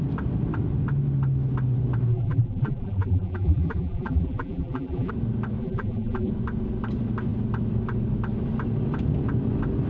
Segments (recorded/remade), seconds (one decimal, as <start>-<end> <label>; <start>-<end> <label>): 0.0-2.1 recorded; 2.1-5.1 remade; 5.1-5.6 recorded; 5.6-6.3 remade; 6.3-9.9 recorded